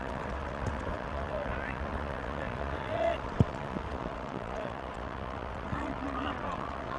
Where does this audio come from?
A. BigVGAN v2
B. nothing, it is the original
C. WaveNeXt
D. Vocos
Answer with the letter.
C